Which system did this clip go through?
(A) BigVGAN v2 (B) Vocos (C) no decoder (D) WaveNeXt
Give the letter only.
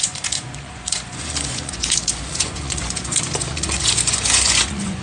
B